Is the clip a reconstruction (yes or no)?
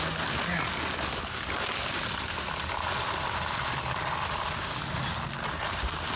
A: no